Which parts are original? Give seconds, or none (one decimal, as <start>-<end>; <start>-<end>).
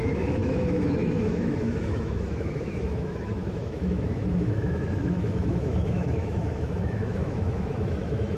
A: none